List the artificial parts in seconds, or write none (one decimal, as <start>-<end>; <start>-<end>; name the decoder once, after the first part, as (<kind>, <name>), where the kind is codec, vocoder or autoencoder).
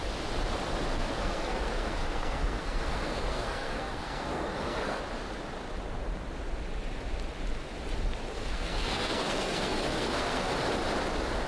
0.9-5.0 (codec, SNAC); 8.3-10.5